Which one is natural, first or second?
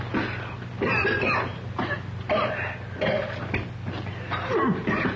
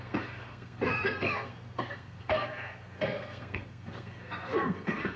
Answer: first